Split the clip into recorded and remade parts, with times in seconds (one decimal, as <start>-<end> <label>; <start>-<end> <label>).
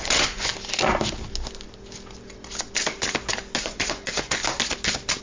0.0-0.5 remade; 0.5-3.6 recorded; 3.6-4.4 remade; 4.4-5.2 recorded